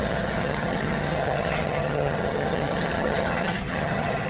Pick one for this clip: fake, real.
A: fake